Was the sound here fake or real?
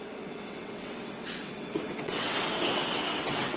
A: fake